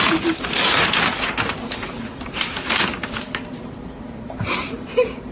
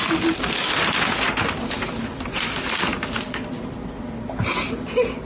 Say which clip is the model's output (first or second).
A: first